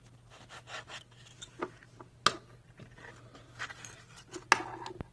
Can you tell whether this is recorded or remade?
recorded